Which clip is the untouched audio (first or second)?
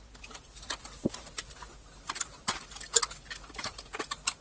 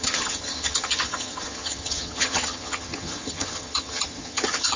first